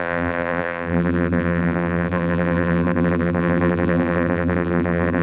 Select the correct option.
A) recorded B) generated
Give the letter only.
B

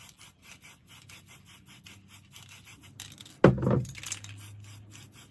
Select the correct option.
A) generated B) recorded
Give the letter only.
B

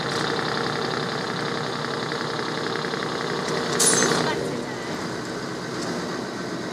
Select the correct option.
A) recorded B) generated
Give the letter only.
A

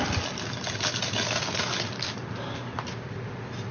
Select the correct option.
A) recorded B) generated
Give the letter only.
A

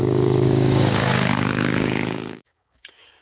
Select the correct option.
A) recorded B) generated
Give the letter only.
B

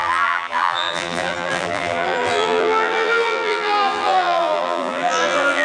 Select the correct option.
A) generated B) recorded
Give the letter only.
A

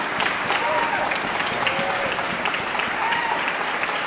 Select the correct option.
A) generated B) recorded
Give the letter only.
A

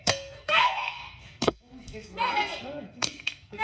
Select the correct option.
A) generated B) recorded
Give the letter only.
A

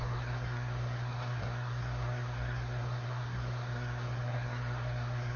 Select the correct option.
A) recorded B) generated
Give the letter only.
B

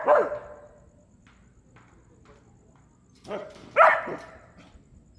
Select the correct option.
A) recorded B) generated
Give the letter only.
A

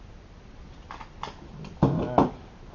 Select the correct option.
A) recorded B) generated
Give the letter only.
A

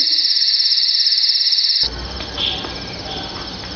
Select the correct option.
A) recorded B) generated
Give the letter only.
B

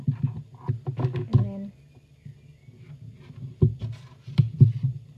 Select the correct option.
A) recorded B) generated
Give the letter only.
A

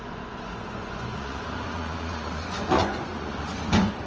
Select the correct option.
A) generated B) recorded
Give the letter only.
A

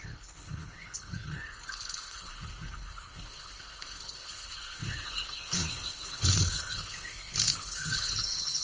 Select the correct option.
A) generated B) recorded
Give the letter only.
A